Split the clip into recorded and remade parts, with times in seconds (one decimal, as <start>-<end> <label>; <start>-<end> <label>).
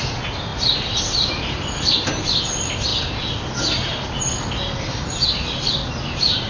0.0-6.5 recorded